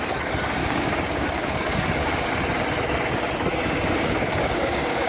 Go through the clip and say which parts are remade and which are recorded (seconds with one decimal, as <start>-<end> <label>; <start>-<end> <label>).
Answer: 0.0-0.6 recorded; 0.6-2.3 remade; 2.3-3.5 recorded; 3.5-5.1 remade